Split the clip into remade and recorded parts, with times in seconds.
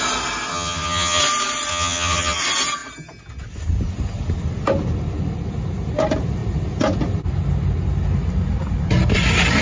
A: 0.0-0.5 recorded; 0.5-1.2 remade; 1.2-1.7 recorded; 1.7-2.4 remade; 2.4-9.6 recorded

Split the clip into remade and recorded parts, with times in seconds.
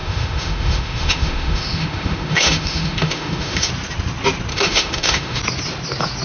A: 0.0-3.7 remade; 3.7-4.5 recorded; 4.5-5.4 remade; 5.4-6.2 recorded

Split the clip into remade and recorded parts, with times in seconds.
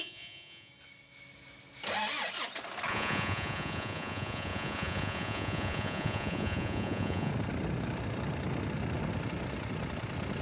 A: 0.0-0.7 remade; 0.7-2.9 recorded; 2.9-7.3 remade; 7.3-10.4 recorded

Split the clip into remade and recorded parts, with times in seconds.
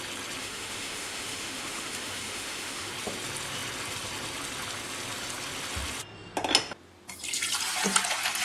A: 0.0-0.4 recorded; 0.4-2.9 remade; 2.9-8.4 recorded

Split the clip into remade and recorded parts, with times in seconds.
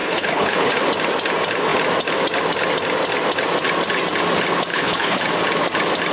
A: 0.0-0.7 remade; 0.7-4.7 recorded; 4.7-5.2 remade; 5.2-6.1 recorded